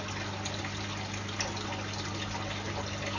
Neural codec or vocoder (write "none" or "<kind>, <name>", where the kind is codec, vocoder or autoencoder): none